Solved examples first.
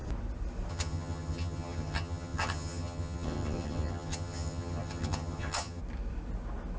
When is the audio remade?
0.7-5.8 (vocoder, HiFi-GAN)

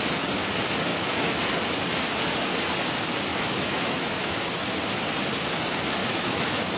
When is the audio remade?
0.9-1.4 (autoencoder, DAC-VAE); 3.3-4.4; 6.0-6.8

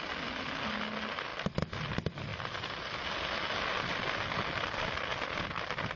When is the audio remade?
none

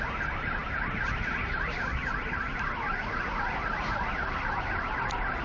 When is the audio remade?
none

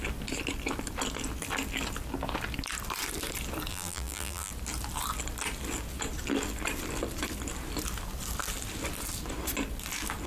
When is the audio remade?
3.7-4.5 (vocoder, BigVGAN v2)